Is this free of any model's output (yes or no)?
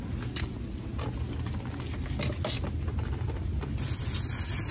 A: yes